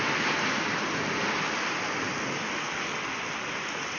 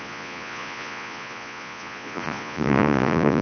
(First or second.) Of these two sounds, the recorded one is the first